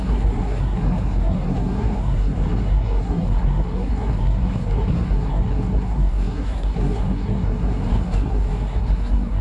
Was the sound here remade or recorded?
remade